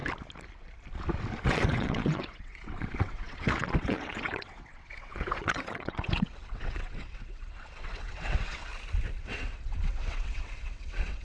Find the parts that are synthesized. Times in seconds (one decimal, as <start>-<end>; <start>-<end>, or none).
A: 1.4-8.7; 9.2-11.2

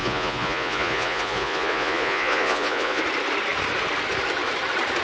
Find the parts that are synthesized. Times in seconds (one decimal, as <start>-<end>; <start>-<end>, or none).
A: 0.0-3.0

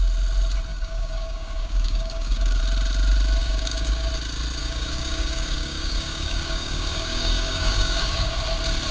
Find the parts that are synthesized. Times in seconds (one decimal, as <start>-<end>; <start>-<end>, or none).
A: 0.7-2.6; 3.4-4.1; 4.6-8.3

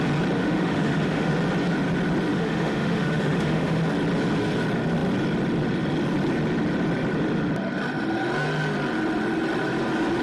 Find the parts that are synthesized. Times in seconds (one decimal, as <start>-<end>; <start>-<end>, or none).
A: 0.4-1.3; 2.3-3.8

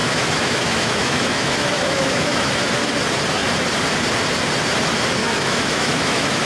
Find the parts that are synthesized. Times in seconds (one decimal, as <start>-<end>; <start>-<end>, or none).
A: 0.0-2.5; 5.2-6.4